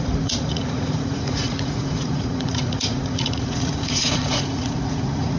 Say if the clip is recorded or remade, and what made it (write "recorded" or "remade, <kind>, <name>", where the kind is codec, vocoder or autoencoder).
remade, vocoder, Vocos